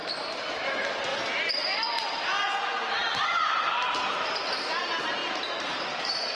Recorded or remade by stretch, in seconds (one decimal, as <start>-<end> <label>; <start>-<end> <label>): 0.0-0.5 recorded; 0.5-1.1 remade; 1.1-2.6 recorded; 2.6-6.3 remade